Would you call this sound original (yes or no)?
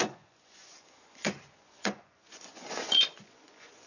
no